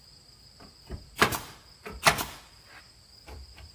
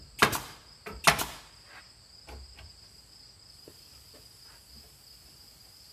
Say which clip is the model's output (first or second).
first